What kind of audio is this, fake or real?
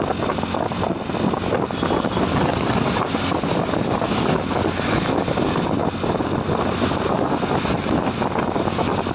real